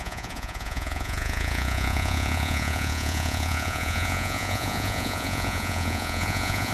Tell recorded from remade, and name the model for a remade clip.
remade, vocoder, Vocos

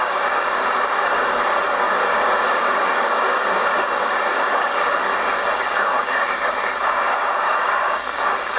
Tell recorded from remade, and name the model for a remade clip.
remade, codec, DAC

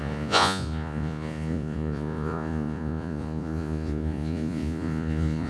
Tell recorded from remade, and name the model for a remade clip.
remade, vocoder, Vocos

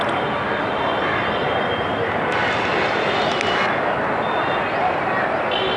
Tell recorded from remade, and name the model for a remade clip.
remade, vocoder, BigVGAN v2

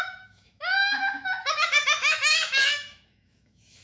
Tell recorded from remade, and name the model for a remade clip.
remade, autoencoder, DAC-VAE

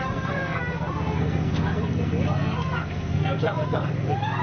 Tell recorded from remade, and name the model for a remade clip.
remade, codec, SNAC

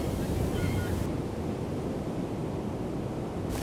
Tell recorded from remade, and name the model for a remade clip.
recorded